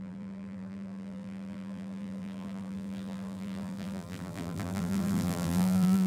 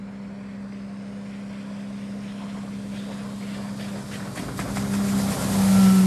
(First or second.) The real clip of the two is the second